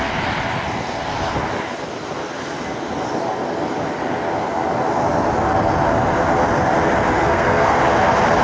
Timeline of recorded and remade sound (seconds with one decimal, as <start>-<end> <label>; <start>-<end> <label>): 0.0-7.2 recorded; 7.2-7.8 remade; 7.8-8.4 recorded